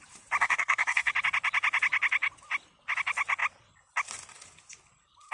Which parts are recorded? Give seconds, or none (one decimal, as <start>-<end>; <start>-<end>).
0.0-0.4; 1.1-5.3